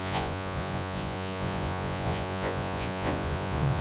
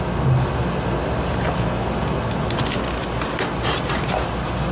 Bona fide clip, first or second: second